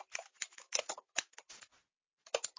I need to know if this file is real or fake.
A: real